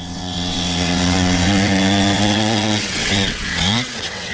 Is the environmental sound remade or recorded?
remade